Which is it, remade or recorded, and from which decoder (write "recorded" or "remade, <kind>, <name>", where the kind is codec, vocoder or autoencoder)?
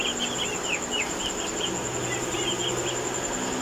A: recorded